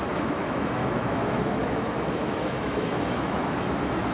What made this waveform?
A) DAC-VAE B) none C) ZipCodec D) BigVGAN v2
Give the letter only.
A